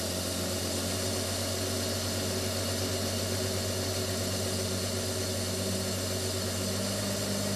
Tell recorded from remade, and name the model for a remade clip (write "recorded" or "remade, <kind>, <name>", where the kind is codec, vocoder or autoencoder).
recorded